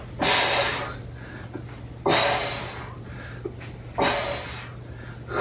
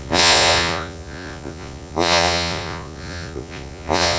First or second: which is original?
first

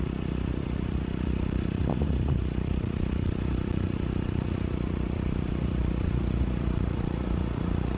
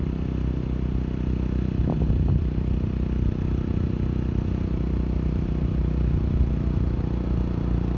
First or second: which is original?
second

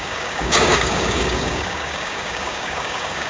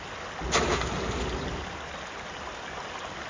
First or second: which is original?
second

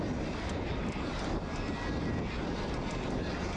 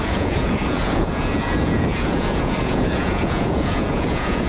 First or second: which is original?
first